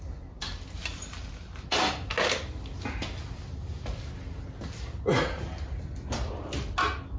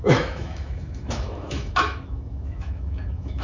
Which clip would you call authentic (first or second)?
first